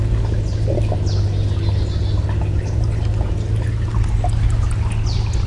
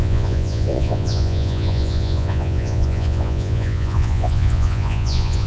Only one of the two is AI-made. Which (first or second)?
second